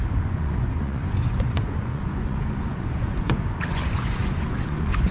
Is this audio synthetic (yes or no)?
yes